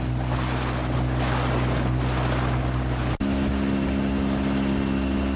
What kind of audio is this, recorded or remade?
recorded